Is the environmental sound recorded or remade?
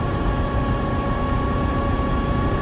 remade